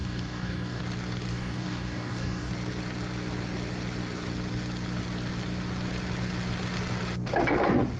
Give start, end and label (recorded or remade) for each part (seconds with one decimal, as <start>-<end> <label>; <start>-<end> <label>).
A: 0.0-0.8 remade; 0.8-1.3 recorded; 1.3-2.5 remade; 2.5-8.0 recorded